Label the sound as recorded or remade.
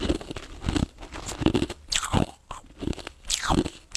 recorded